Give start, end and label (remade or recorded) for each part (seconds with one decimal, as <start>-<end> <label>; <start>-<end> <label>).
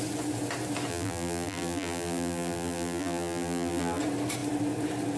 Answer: 0.0-0.9 recorded; 0.9-4.0 remade; 4.0-5.2 recorded